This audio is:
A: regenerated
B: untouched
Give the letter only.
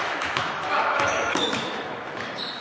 A